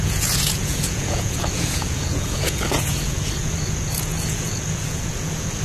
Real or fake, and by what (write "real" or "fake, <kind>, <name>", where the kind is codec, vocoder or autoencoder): fake, vocoder, Vocos